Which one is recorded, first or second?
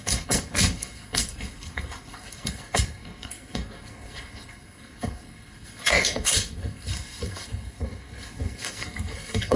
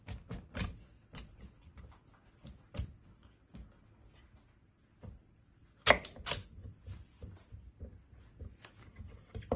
second